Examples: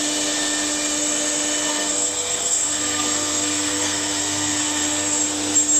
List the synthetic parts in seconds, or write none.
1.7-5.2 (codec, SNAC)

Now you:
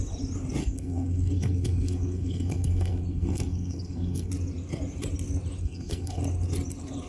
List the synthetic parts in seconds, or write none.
0.6-4.3 (codec, SNAC); 5.6-6.2

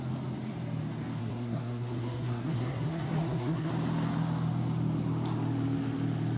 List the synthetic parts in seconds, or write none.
1.2-3.7 (codec, SNAC)

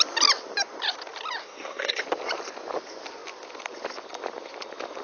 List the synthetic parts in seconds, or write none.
1.4-2.0 (codec, SNAC)

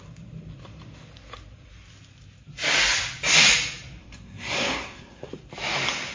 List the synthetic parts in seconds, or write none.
4.0-5.3 (codec, SNAC)

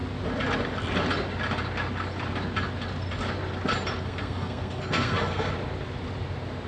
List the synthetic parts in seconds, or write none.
4.0-5.5 (codec, SNAC)